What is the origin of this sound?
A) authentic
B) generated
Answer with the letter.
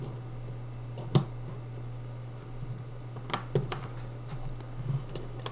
A